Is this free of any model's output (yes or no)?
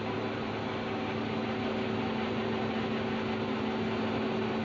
yes